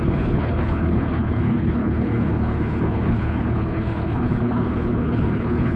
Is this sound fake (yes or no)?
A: yes